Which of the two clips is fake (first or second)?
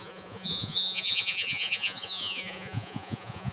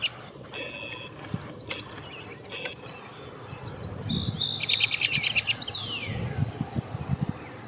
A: first